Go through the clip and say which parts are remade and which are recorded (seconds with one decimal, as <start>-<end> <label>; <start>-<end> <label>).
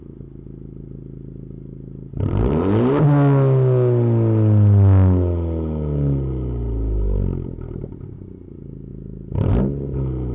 0.0-10.3 recorded